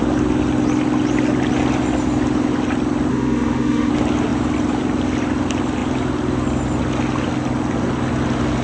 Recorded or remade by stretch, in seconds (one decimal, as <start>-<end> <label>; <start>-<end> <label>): 0.0-3.1 recorded; 3.1-3.9 remade; 3.9-8.6 recorded